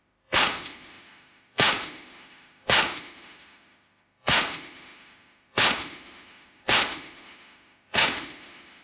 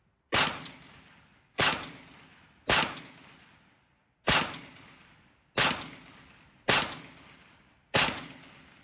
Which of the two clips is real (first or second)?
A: second